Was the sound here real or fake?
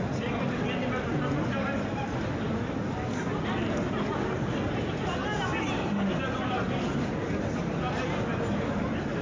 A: real